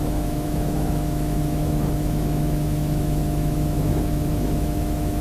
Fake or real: fake